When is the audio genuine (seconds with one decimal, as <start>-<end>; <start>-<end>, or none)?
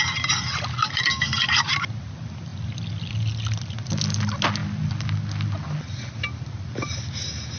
0.0-7.6